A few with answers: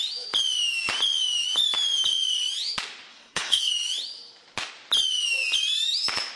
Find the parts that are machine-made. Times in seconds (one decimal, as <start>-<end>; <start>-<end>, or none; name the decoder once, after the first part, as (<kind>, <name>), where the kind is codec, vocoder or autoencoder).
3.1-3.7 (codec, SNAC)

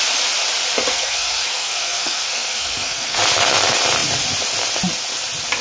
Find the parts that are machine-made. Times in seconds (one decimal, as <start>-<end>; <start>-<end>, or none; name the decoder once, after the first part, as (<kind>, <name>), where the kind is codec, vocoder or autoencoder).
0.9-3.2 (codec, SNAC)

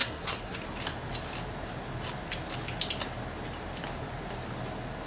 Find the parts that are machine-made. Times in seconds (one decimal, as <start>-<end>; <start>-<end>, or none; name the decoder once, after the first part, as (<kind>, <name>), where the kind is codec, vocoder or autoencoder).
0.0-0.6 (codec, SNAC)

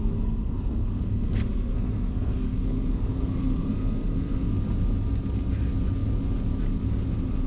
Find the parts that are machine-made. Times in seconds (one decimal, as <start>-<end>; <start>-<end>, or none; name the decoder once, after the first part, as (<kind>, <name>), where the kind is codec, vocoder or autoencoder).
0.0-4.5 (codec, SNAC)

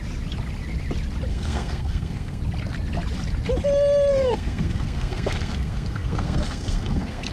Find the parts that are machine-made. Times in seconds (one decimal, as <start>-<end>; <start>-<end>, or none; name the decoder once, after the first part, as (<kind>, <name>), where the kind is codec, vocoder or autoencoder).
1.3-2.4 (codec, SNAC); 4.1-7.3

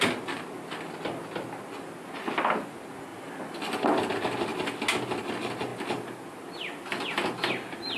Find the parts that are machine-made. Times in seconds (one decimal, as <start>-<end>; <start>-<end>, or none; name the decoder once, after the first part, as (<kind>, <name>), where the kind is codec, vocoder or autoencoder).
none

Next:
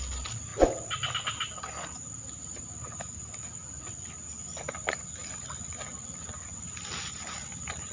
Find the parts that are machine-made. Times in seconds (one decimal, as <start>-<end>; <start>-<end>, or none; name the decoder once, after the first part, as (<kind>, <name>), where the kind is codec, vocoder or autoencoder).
none

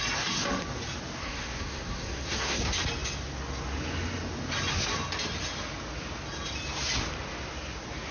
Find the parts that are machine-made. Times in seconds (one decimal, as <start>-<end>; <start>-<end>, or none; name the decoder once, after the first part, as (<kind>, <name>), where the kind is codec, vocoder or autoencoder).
1.2-2.6 (codec, SNAC)